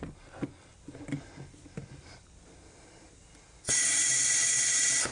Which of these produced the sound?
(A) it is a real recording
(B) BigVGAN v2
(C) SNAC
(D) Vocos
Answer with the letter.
A